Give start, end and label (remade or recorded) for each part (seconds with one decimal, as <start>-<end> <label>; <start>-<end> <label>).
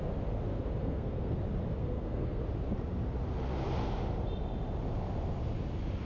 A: 0.0-0.8 recorded; 0.8-1.4 remade; 1.4-1.8 recorded; 1.8-2.4 remade; 2.4-6.1 recorded